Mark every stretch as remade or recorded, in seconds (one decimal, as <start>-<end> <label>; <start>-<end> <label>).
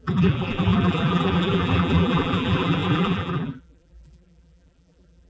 0.0-5.3 remade